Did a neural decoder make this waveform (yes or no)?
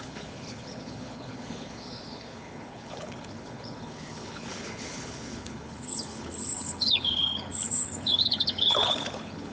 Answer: yes